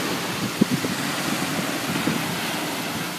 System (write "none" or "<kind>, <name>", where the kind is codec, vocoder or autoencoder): none